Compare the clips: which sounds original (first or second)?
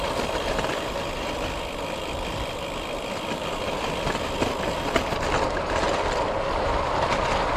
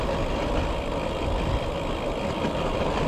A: second